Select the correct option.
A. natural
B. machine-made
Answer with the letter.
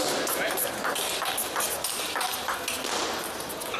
A